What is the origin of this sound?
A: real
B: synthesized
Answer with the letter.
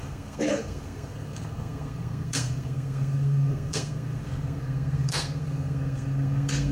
B